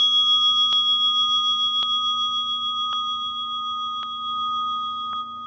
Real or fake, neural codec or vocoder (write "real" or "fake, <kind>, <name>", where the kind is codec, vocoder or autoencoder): real